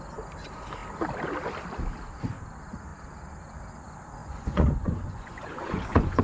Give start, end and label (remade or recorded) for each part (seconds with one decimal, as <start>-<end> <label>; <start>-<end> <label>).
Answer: 0.0-4.2 recorded; 4.2-6.2 remade